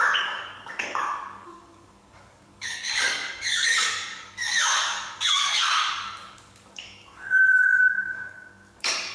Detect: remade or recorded remade